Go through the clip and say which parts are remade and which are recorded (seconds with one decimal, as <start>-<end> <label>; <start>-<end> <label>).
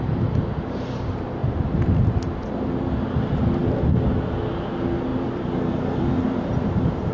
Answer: 0.0-1.4 recorded; 1.4-1.9 remade; 1.9-5.1 recorded; 5.1-7.1 remade